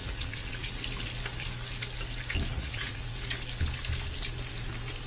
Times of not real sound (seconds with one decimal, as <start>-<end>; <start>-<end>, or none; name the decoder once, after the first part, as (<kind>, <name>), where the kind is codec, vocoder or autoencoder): 0.0-0.8 (vocoder, Vocos); 2.5-3.1